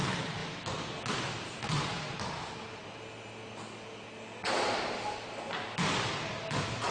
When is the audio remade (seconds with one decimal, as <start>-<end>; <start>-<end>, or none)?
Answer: 0.0-0.4; 1.1-2.8